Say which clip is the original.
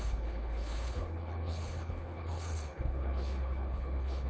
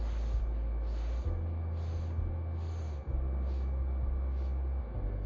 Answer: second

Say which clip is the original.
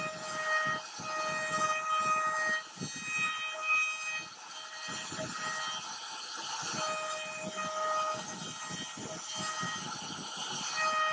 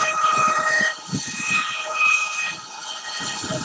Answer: first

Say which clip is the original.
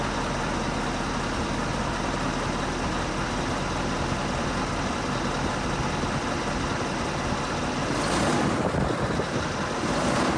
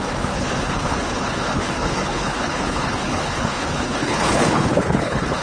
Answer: first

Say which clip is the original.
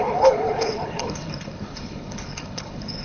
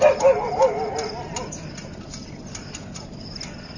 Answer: second